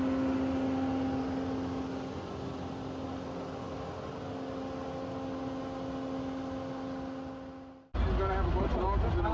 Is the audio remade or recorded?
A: recorded